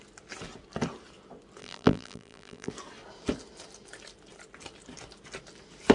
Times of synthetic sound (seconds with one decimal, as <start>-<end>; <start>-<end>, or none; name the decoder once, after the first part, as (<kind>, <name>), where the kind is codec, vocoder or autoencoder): 1.6-2.7 (vocoder, BigVGAN v2)